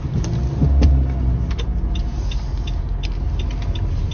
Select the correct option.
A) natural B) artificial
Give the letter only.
A